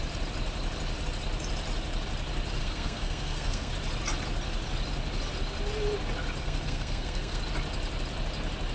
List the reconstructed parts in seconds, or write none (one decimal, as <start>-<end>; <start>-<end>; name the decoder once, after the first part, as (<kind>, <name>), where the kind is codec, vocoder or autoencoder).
2.6-3.7 (codec, SNAC); 6.4-7.4